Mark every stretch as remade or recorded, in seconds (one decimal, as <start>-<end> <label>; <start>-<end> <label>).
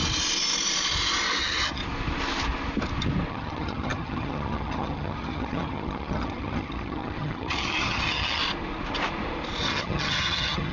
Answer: 0.0-1.4 recorded; 1.4-1.8 remade; 1.8-3.3 recorded; 3.3-8.4 remade; 8.4-9.6 recorded; 9.6-10.7 remade